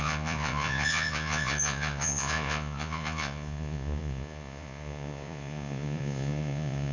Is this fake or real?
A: fake